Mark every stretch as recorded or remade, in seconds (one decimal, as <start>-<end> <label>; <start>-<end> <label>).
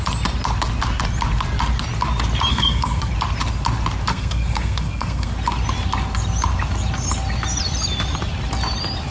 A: 0.0-2.5 recorded; 2.5-3.1 remade; 3.1-4.1 recorded; 4.1-5.3 remade; 5.3-9.1 recorded